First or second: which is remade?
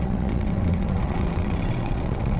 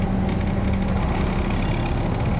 first